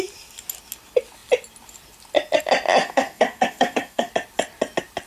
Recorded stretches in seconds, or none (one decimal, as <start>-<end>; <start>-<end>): 0.0-2.8; 4.1-5.1